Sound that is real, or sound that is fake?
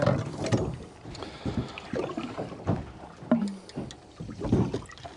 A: real